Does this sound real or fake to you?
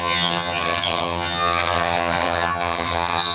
fake